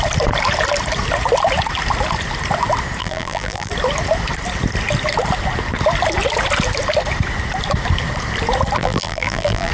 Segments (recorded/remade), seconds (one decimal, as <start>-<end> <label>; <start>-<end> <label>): 0.0-3.0 recorded; 3.0-3.7 remade; 3.7-8.8 recorded; 8.8-9.7 remade